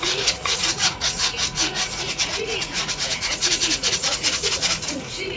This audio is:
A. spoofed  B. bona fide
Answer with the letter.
A